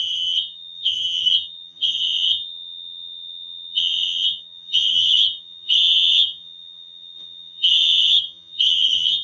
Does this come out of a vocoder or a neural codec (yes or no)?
yes